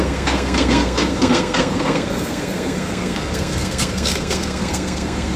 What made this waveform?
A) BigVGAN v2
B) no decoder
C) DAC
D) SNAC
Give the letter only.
D